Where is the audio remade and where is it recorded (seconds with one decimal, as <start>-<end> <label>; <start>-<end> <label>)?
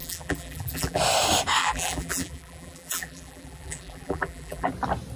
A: 0.0-1.0 remade; 1.0-1.6 recorded; 1.6-4.7 remade; 4.7-5.2 recorded